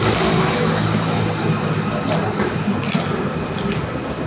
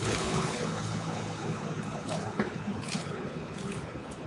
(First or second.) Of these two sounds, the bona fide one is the first